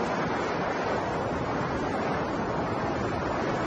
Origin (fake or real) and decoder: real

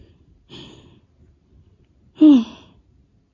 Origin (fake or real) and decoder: real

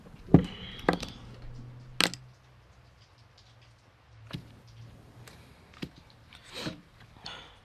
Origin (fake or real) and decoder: real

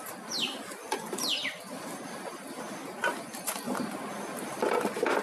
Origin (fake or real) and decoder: real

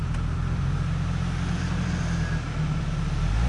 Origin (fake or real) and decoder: real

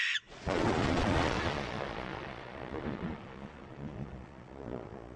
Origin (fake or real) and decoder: fake, vocoder, Vocos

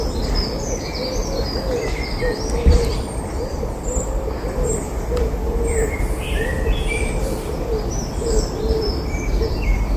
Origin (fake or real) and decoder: fake, vocoder, BigVGAN v2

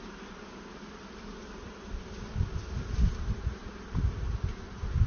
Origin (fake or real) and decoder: real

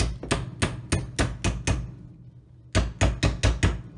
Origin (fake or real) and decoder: real